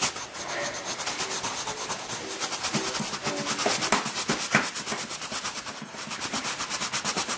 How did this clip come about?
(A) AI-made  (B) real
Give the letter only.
B